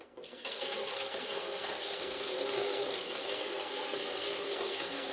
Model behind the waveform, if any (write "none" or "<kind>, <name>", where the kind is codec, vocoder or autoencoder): codec, SNAC